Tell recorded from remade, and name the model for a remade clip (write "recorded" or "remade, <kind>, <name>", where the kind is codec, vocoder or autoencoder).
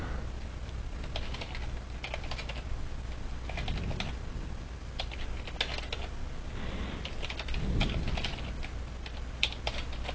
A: recorded